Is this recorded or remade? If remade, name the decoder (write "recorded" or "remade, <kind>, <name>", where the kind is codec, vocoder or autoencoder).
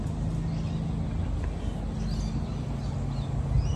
recorded